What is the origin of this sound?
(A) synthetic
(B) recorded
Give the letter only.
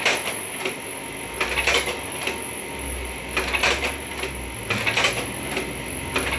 B